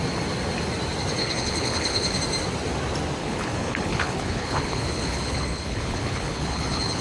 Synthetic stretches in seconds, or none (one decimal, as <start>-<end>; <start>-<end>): 1.2-2.2; 3.2-7.0